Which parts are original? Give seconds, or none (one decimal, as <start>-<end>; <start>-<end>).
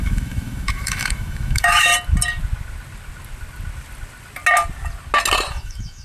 1.9-5.5